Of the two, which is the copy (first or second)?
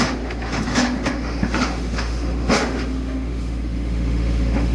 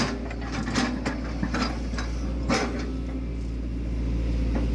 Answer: first